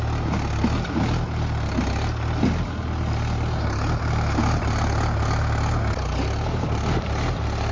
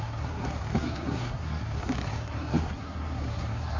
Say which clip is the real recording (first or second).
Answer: first